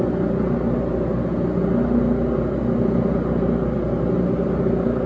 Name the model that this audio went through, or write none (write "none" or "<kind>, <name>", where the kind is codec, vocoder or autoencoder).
none